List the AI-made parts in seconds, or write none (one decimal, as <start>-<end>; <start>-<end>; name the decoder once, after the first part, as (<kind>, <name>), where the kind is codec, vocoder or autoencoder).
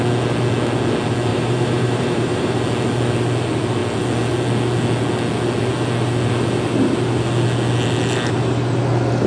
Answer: 1.3-2.6 (vocoder, BigVGAN v2)